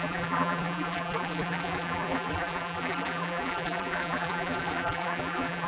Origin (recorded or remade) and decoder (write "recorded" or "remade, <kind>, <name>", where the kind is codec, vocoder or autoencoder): remade, vocoder, BigVGAN v2